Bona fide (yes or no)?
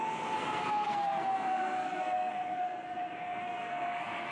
no